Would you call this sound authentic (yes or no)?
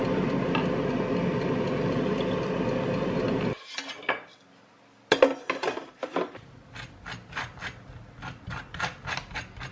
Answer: yes